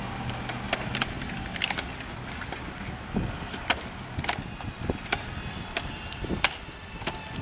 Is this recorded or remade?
recorded